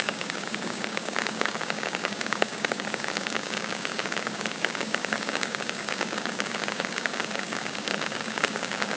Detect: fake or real fake